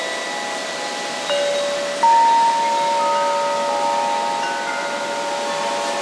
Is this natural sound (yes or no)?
yes